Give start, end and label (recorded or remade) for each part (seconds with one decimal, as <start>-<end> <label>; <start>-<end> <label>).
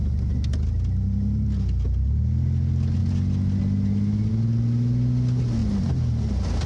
0.0-6.7 recorded